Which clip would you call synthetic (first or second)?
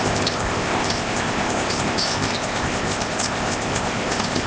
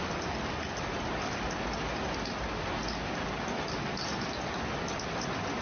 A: first